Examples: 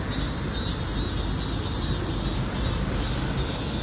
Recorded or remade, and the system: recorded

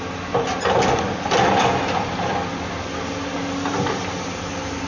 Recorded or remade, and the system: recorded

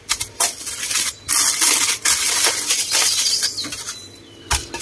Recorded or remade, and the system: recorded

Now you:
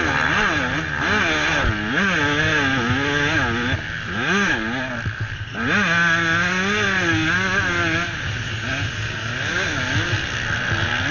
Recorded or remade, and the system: recorded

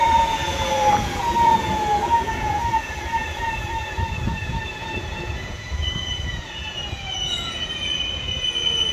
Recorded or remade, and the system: remade, vocoder, Vocos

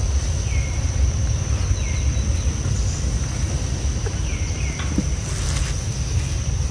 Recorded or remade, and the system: recorded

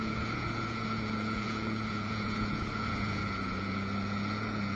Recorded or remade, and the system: remade, vocoder, Vocos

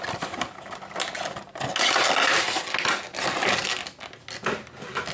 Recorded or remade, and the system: recorded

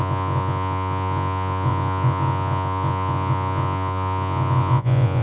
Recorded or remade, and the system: remade, vocoder, Vocos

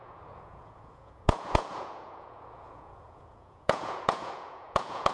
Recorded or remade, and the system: remade, vocoder, Vocos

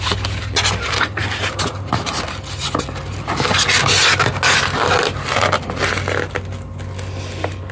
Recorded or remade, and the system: recorded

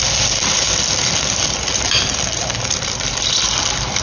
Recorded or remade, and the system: recorded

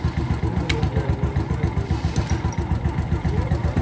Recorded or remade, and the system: recorded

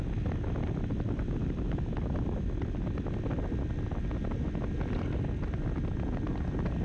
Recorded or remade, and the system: recorded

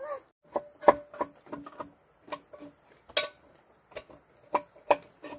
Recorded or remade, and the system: recorded